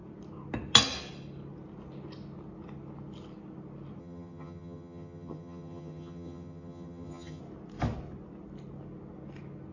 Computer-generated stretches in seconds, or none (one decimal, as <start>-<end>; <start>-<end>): 4.0-7.4